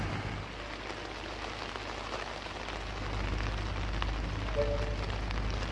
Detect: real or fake real